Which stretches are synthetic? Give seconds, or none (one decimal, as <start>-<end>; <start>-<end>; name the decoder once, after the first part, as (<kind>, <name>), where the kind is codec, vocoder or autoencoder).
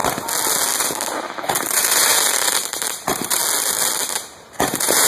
0.8-3.4 (vocoder, BigVGAN v2); 4.3-5.1